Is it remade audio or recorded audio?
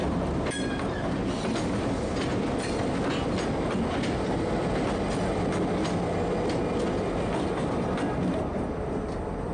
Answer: recorded